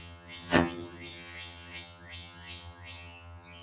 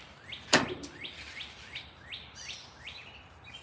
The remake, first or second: first